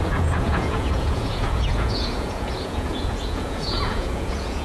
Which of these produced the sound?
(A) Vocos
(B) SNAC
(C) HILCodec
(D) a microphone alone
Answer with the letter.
A